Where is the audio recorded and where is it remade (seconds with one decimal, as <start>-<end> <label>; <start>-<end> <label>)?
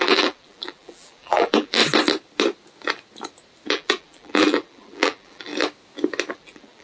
0.0-1.8 remade; 1.8-3.7 recorded; 3.7-5.5 remade; 5.5-6.3 recorded; 6.3-6.8 remade